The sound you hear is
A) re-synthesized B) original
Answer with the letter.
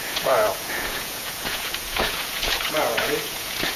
A